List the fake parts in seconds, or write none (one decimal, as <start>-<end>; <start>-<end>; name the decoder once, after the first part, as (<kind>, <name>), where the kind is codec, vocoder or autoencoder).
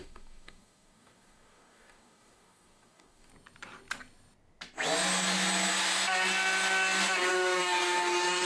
0.0-3.3 (codec, DAC); 7.3-8.5